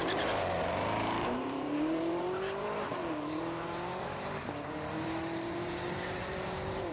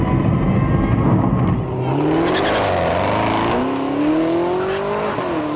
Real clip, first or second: second